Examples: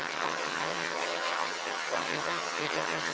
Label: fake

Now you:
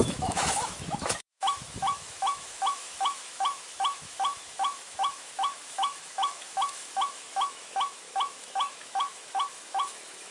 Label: fake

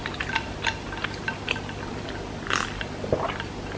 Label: real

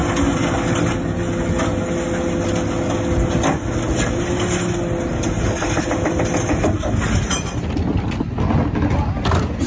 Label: real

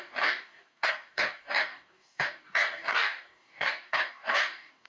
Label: fake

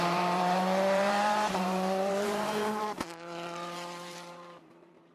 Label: fake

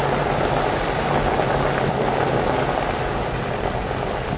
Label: fake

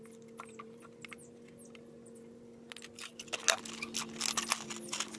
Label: real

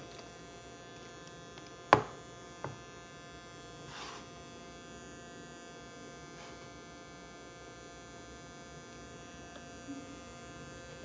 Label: real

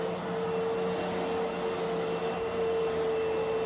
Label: real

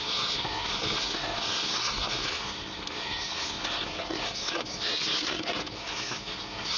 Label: fake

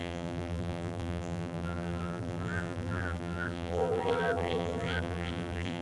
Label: fake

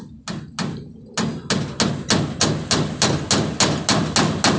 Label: real